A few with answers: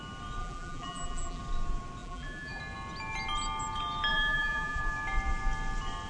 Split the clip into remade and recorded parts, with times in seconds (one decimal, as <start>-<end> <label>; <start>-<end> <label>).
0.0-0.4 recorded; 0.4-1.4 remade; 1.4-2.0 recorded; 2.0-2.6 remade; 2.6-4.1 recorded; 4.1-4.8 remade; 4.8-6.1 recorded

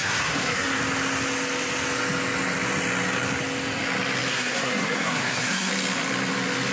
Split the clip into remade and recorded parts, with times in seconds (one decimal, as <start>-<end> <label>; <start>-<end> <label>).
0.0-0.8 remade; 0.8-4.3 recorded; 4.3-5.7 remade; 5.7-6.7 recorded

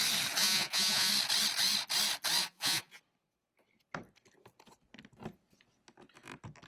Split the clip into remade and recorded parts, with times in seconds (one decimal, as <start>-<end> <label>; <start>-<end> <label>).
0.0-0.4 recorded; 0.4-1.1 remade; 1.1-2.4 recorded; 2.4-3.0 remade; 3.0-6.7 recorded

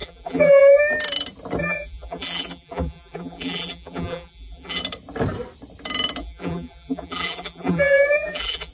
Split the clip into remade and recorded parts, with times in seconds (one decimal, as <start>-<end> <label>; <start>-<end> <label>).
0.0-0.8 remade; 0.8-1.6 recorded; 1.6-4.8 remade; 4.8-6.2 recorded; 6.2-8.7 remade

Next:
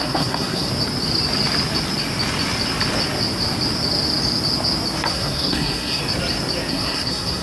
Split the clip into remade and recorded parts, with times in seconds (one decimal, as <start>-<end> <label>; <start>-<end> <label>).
0.0-0.7 remade; 0.7-5.1 recorded; 5.1-6.0 remade; 6.0-6.7 recorded; 6.7-7.4 remade